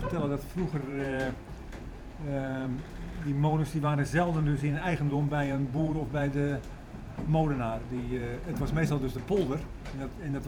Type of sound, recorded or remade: remade